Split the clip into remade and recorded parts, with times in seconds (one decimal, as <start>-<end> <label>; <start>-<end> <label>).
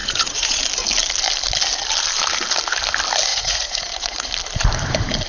0.0-0.6 remade; 0.6-3.3 recorded; 3.3-4.3 remade; 4.3-5.3 recorded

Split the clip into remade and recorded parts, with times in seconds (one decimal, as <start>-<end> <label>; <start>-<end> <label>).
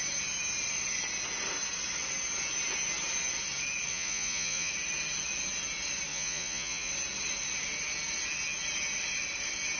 0.0-3.9 recorded; 3.9-4.7 remade; 4.7-6.1 recorded; 6.1-6.9 remade; 6.9-9.8 recorded